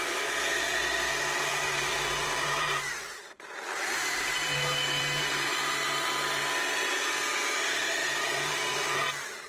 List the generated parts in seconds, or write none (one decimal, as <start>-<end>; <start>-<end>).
1.5-5.3; 8.0-8.5